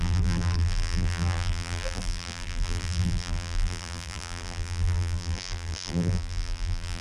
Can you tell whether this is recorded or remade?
remade